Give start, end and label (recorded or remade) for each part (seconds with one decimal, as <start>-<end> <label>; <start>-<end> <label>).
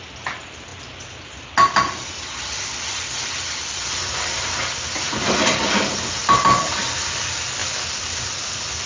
0.0-8.9 recorded